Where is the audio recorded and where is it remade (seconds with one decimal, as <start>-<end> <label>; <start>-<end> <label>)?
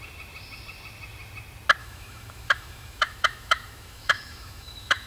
0.0-1.8 recorded; 1.8-5.1 remade